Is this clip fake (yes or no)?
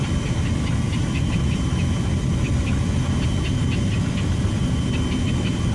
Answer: no